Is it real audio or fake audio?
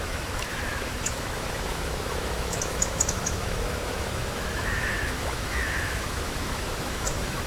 fake